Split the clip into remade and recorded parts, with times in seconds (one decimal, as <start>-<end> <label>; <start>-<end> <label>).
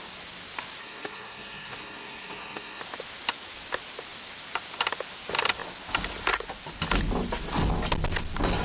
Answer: 0.0-0.8 recorded; 0.8-2.8 remade; 2.8-8.6 recorded